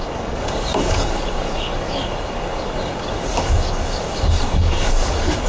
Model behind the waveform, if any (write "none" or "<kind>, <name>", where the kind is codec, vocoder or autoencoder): codec, DAC